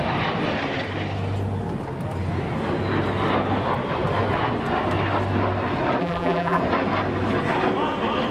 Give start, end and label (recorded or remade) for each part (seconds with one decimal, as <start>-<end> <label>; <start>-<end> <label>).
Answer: 0.0-6.0 recorded; 6.0-6.6 remade; 6.6-8.3 recorded